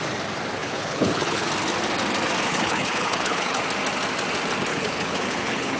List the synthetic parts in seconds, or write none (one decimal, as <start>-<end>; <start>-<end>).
0.6-1.5; 2.5-3.6; 4.7-5.8